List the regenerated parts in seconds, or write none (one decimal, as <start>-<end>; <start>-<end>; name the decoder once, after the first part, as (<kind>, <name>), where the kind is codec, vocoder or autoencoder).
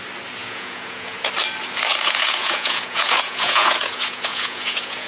0.4-1.3 (vocoder, Vocos); 1.9-5.1